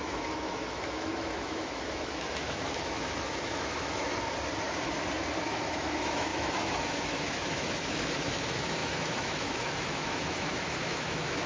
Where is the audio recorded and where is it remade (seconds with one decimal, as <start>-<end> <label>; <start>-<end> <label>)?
0.0-4.1 remade; 4.1-5.4 recorded; 5.4-11.5 remade